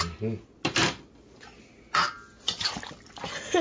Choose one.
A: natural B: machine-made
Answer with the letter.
A